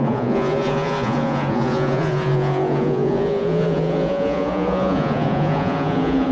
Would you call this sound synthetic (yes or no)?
yes